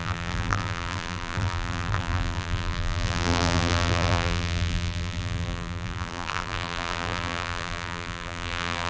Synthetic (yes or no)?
yes